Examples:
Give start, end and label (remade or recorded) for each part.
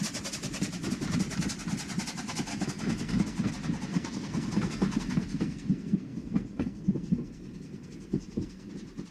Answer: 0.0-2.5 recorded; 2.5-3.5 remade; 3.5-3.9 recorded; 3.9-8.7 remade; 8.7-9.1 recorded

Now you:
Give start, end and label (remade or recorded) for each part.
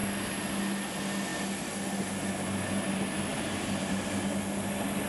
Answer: 0.0-5.1 recorded